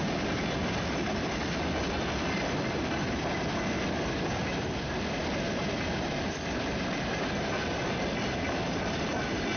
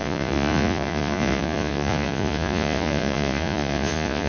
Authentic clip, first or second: first